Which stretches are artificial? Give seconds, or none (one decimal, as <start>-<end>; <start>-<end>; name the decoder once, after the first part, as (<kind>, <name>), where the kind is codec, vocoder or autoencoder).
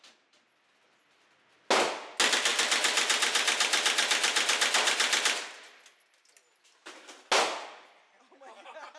none